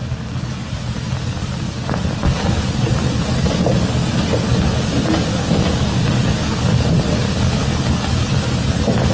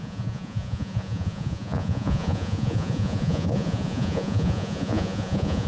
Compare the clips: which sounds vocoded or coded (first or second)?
second